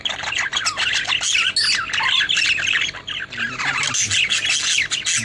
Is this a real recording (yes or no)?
yes